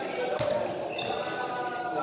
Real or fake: real